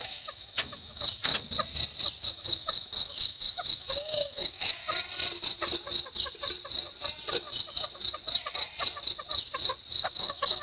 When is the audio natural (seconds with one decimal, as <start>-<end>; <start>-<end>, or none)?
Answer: 1.3-2.3; 4.8-10.0